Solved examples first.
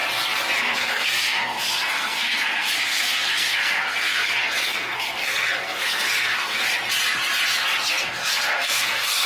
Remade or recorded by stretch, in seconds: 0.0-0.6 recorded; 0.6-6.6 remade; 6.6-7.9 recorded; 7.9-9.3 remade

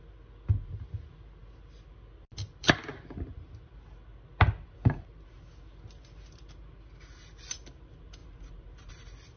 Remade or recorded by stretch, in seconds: 0.0-9.4 recorded

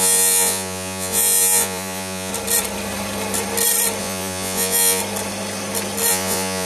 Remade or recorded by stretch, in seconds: 0.0-2.3 remade; 2.3-4.0 recorded; 4.0-5.0 remade; 5.0-6.1 recorded; 6.1-6.7 remade